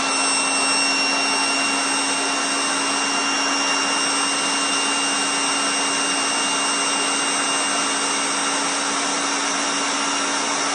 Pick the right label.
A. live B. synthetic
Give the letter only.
A